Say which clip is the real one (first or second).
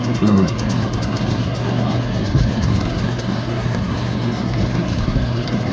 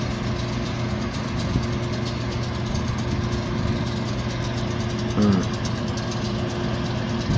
second